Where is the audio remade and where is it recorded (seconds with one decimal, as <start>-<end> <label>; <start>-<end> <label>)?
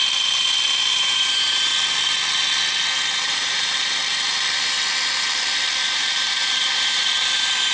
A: 0.0-0.9 recorded; 0.9-1.7 remade; 1.7-3.2 recorded; 3.2-4.0 remade; 4.0-5.9 recorded; 5.9-7.7 remade